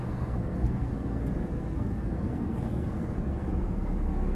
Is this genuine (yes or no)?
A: no